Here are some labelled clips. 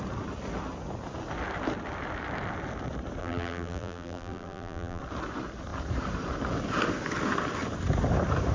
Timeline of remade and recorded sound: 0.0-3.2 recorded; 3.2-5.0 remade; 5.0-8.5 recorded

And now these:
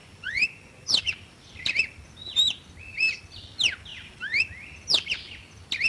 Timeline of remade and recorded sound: 0.0-1.0 remade; 1.0-5.9 recorded

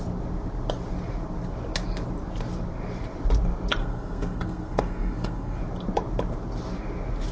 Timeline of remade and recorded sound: 0.0-3.8 recorded; 3.8-5.6 remade; 5.6-7.3 recorded

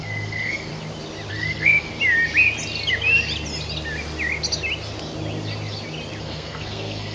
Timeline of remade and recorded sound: 0.0-0.7 remade; 0.7-1.3 recorded; 1.3-1.9 remade; 1.9-6.2 recorded; 6.2-7.1 remade

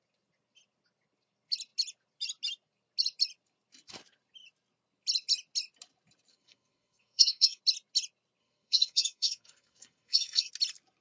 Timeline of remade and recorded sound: 0.0-6.3 recorded; 6.3-7.6 remade; 7.6-8.4 recorded; 8.4-10.5 remade; 10.5-11.0 recorded

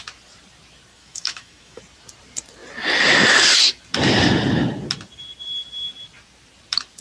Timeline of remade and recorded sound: 0.0-0.9 recorded; 0.9-1.8 remade; 1.8-7.0 recorded